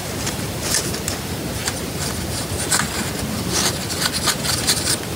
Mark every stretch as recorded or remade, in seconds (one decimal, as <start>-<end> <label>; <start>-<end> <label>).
0.0-0.7 remade; 0.7-5.2 recorded